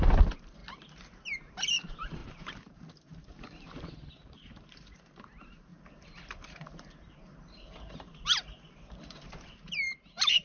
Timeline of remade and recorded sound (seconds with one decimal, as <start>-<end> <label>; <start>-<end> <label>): 0.0-0.6 remade; 0.6-1.5 recorded; 1.5-10.4 remade